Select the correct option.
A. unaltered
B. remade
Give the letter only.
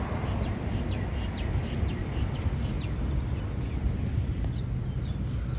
A